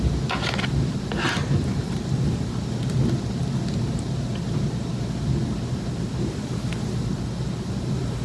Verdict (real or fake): real